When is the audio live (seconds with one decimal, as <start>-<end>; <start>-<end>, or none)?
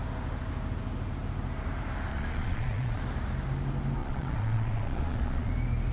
0.0-2.1; 3.0-4.0; 5.5-5.9